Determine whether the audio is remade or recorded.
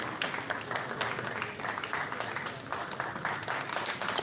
recorded